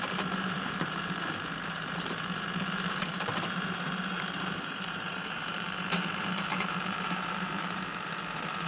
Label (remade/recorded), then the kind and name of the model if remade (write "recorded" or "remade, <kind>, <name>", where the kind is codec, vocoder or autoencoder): remade, vocoder, BigVGAN v2